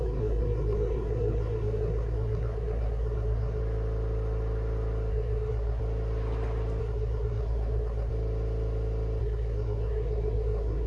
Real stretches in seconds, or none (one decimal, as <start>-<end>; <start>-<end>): 3.6-5.1; 5.8-6.8; 8.1-9.2